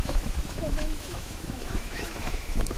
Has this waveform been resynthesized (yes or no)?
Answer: yes